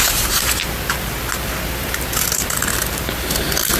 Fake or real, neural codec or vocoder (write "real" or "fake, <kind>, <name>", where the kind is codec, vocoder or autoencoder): real